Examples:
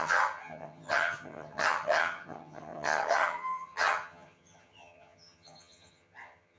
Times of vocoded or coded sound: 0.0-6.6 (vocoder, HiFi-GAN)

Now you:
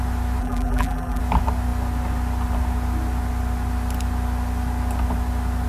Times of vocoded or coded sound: 0.4-1.2 (vocoder, BigVGAN v2)

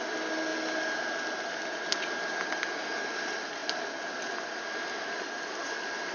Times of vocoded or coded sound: none

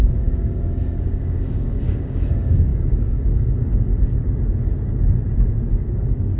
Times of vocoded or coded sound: 0.0-3.9 (codec, DAC); 5.7-6.4

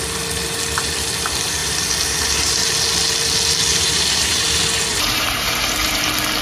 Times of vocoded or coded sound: 1.6-2.6 (vocoder, BigVGAN v2); 3.7-4.5; 4.9-6.0

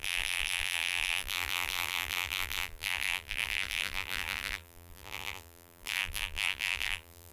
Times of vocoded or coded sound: 0.0-7.3 (vocoder, BigVGAN v2)

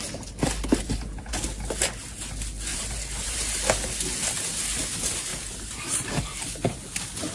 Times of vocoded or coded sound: 2.7-3.6 (vocoder, BigVGAN v2); 5.3-6.1